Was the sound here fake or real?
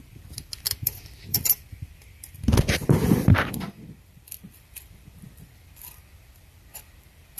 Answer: fake